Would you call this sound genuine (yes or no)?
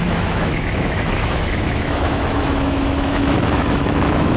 no